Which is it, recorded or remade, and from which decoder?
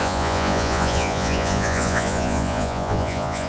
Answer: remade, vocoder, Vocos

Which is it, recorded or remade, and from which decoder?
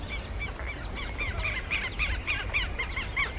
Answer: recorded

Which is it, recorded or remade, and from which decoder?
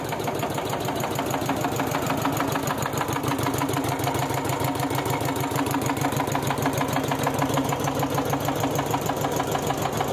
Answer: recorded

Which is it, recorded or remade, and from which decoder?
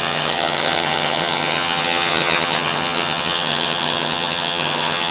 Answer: remade, vocoder, HiFi-GAN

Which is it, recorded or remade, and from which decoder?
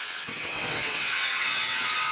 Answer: remade, vocoder, WaveNeXt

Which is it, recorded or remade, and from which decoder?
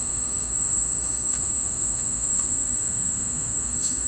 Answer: remade, autoencoder, DAC-VAE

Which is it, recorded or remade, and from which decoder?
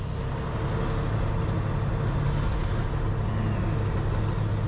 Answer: recorded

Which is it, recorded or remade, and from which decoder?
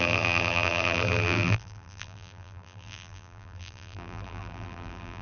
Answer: remade, vocoder, BigVGAN v2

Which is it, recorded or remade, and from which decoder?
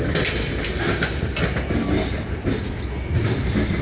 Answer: recorded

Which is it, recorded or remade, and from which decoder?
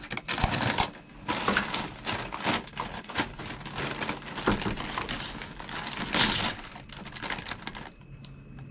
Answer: recorded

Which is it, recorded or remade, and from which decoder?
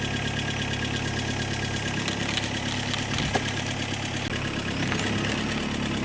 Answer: recorded